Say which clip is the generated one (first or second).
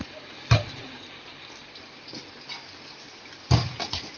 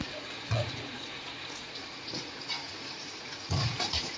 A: second